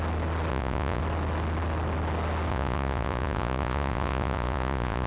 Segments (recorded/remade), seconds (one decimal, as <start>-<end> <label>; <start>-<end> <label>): 0.0-0.5 recorded; 0.5-1.0 remade; 1.0-2.5 recorded; 2.5-5.1 remade